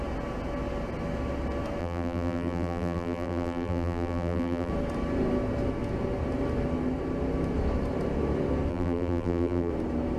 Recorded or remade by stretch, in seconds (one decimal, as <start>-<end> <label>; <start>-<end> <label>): 0.0-1.8 recorded; 1.8-4.7 remade; 4.7-8.7 recorded; 8.7-9.7 remade; 9.7-10.2 recorded